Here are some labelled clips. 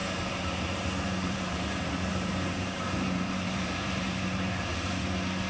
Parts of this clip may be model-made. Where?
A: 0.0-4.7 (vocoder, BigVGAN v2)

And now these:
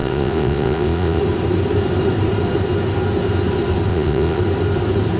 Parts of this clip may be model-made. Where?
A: 0.0-1.2 (vocoder, Vocos); 3.9-4.4

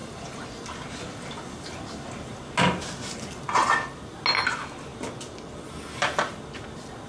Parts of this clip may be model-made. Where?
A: none

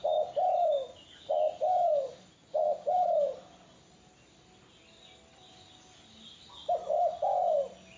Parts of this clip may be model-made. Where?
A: none

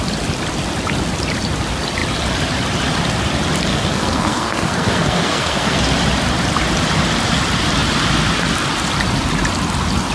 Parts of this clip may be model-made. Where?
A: 3.7-5.8 (codec, SNAC)

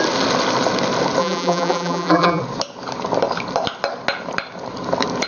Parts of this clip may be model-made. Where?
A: 1.2-2.4 (vocoder, BigVGAN v2)

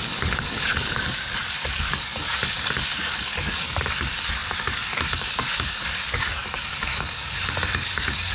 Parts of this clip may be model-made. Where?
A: 0.0-8.3 (codec, DAC)

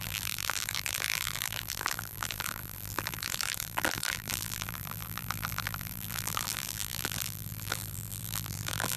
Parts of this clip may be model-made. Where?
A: 0.0-9.0 (vocoder, BigVGAN v2)